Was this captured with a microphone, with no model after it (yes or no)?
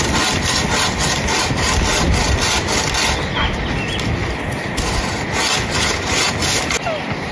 yes